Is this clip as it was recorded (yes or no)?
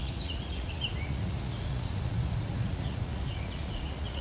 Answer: no